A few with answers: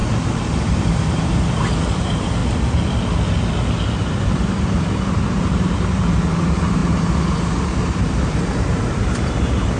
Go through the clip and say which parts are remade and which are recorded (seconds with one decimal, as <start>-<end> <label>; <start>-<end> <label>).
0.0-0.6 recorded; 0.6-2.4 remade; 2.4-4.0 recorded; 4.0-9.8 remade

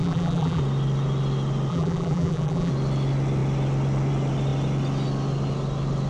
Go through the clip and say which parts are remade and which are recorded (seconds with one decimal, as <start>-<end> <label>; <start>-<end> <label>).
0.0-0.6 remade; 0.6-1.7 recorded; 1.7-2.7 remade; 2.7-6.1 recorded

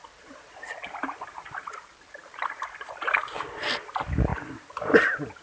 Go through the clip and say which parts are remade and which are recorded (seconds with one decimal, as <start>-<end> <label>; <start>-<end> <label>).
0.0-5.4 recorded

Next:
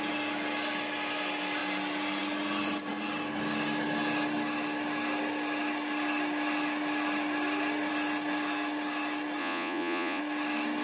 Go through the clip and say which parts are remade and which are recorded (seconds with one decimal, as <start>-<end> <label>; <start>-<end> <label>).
0.0-9.4 recorded; 9.4-10.2 remade; 10.2-10.8 recorded

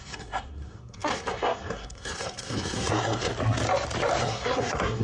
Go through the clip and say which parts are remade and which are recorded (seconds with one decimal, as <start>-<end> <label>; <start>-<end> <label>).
0.0-3.3 remade; 3.3-4.2 recorded; 4.2-5.0 remade